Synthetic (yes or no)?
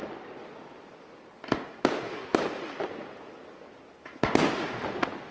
no